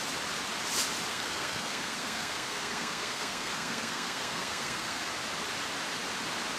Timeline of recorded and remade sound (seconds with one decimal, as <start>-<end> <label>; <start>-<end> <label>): 0.0-1.1 recorded; 1.1-5.1 remade; 5.1-6.6 recorded